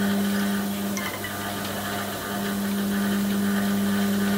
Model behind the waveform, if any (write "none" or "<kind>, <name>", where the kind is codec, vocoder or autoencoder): none